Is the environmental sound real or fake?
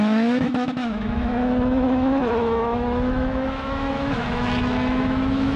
fake